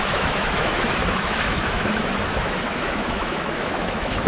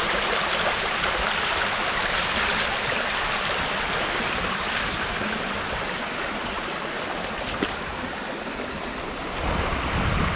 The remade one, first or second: first